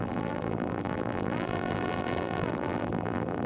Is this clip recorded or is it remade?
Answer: remade